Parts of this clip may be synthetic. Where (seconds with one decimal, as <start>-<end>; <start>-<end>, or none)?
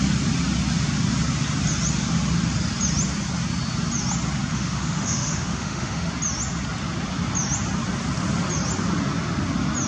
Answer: 4.5-6.1